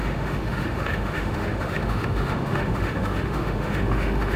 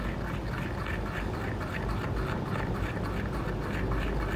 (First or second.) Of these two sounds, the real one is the second